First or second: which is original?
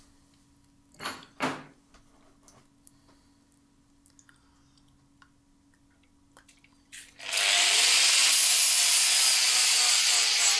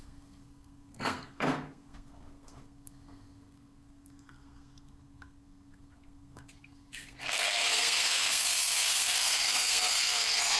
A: first